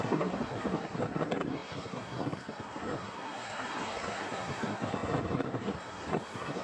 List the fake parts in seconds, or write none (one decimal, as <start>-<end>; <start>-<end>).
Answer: 0.0-6.6